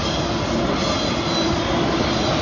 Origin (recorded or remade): recorded